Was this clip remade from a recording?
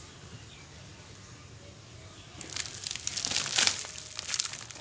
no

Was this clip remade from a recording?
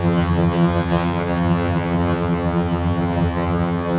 yes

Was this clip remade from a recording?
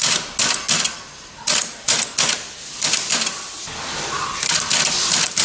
no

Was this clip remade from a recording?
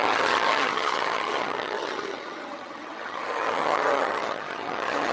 yes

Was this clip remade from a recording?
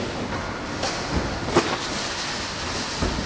no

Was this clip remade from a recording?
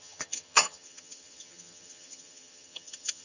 yes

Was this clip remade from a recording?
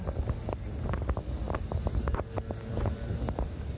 no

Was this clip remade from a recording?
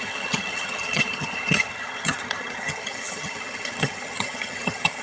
yes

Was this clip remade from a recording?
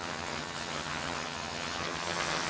yes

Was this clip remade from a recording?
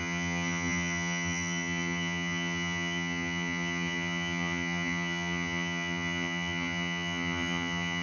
yes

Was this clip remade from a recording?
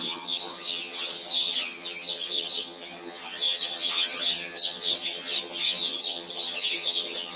yes